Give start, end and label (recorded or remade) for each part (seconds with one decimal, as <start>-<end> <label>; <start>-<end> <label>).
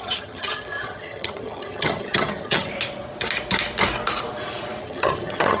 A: 0.0-2.7 remade; 2.7-4.8 recorded; 4.8-5.6 remade